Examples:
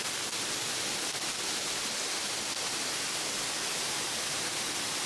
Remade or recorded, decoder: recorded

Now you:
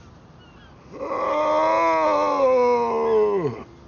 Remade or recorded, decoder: recorded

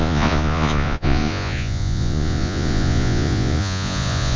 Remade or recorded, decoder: remade, vocoder, Vocos